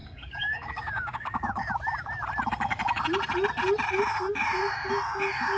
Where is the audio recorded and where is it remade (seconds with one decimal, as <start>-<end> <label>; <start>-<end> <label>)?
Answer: 0.0-1.6 remade; 1.6-5.6 recorded